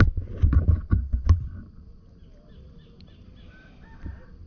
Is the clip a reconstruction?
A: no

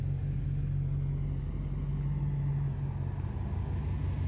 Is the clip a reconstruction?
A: no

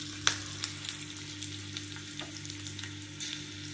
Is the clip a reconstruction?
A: no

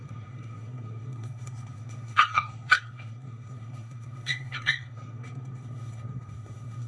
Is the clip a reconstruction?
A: yes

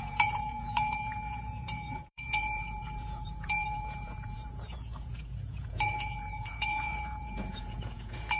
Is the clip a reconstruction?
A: yes